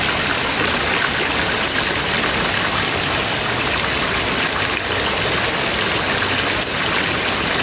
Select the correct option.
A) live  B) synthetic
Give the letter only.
A